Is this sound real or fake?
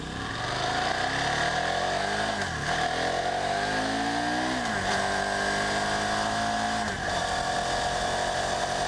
real